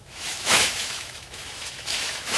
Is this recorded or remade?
remade